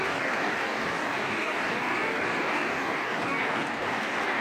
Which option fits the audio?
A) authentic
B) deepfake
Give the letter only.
B